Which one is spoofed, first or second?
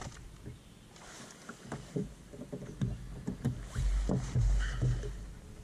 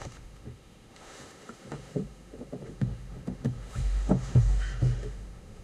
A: second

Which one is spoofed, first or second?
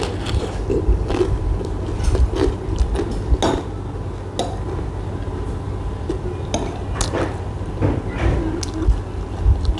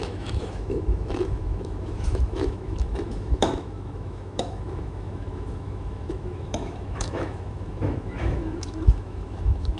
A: second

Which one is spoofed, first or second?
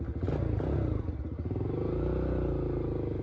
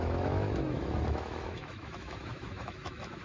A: second